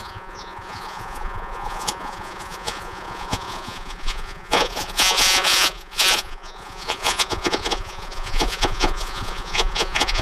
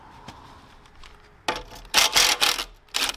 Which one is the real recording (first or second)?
second